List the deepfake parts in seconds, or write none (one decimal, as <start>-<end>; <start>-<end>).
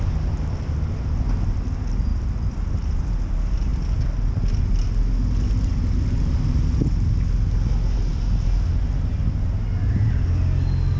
none